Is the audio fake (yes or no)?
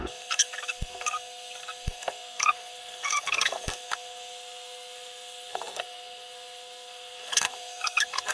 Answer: yes